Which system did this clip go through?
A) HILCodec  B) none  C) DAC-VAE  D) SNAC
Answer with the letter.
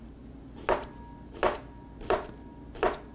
B